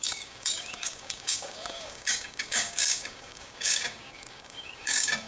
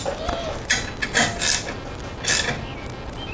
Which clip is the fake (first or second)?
first